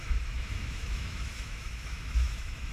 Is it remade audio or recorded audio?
remade